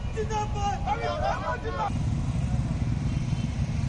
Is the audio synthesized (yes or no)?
no